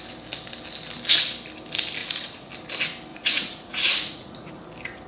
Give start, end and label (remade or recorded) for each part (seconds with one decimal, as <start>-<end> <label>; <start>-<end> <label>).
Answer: 0.0-2.0 recorded; 2.0-2.5 remade; 2.5-3.1 recorded; 3.1-4.5 remade; 4.5-5.1 recorded